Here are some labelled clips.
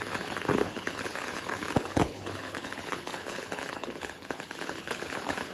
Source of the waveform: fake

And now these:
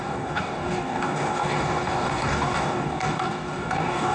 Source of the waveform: fake